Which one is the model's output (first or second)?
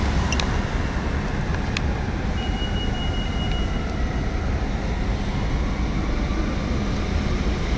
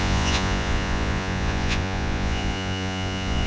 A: second